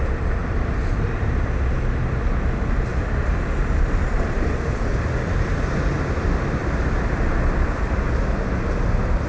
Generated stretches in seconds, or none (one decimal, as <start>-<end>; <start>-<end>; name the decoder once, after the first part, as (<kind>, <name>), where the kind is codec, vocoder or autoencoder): 2.9-4.8 (vocoder, BigVGAN v2); 6.6-7.3